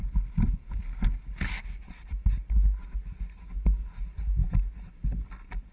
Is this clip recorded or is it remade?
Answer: recorded